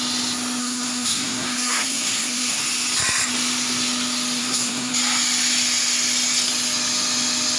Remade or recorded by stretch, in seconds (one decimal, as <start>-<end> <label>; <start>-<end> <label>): 0.0-0.6 recorded; 0.6-2.6 remade; 2.6-4.4 recorded; 4.4-4.9 remade; 4.9-7.6 recorded